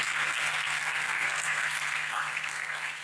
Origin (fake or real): fake